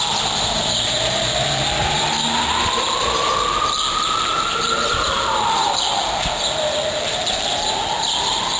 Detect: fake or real fake